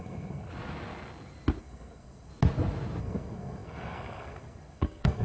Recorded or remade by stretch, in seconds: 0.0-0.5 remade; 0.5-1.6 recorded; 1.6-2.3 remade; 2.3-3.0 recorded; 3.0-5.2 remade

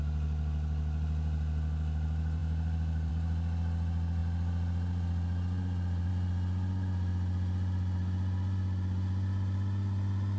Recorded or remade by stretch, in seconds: 0.0-10.4 recorded

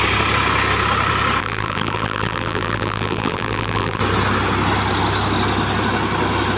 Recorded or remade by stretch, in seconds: 0.0-1.4 recorded; 1.4-4.0 remade; 4.0-6.6 recorded

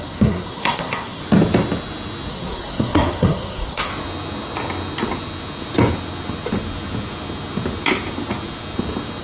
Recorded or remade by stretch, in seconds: 0.0-1.2 remade; 1.2-2.3 recorded; 2.3-3.9 remade; 3.9-9.2 recorded